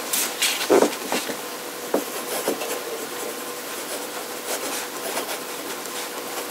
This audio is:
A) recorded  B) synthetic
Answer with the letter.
A